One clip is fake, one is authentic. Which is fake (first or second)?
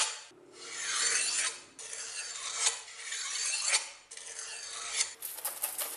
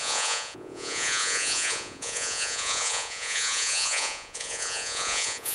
second